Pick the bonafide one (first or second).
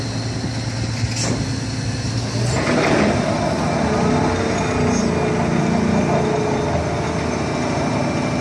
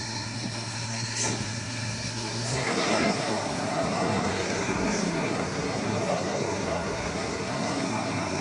first